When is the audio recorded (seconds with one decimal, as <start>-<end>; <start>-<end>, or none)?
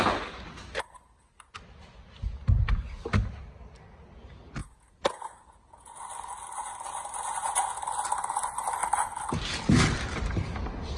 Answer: 0.0-4.6; 6.0-11.0